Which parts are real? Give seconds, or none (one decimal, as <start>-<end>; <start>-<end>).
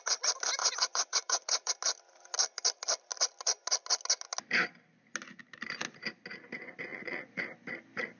0.0-0.6; 1.7-6.9; 7.4-8.2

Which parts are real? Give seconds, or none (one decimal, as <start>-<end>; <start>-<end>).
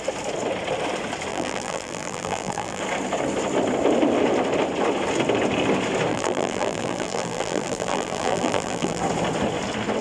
0.0-1.3; 2.8-6.1; 9.0-10.0